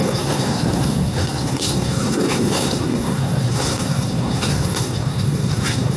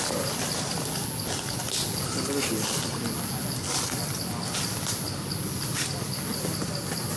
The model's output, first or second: first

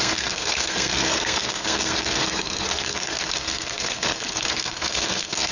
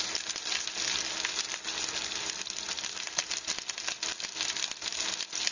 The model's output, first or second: first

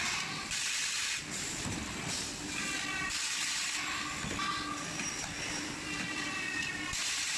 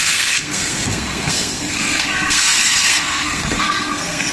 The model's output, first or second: second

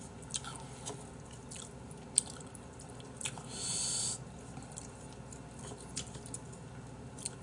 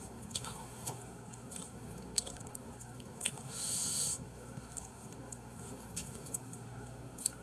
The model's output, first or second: second